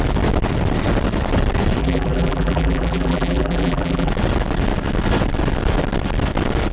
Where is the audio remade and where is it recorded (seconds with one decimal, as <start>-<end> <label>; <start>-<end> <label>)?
0.0-1.8 recorded; 1.8-4.1 remade; 4.1-6.7 recorded